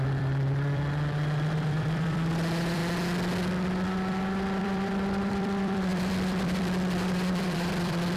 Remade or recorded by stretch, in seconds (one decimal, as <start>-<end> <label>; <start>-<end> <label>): 0.0-2.8 remade; 2.8-4.6 recorded; 4.6-8.2 remade